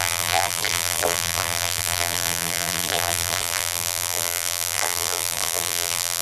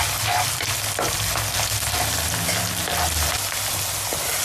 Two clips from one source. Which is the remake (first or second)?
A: first